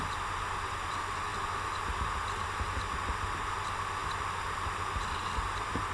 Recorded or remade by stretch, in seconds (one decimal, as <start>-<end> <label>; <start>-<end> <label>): 0.0-5.9 recorded